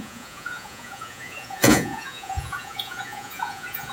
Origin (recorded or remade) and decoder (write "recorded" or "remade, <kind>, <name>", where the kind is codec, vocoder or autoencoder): remade, vocoder, Vocos